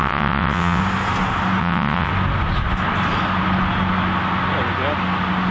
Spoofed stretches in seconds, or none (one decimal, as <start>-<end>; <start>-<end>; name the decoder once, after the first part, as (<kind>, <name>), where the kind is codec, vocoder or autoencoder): 0.0-0.8 (vocoder, WaveNeXt); 1.6-2.1